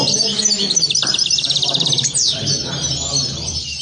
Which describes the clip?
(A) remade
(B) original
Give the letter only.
A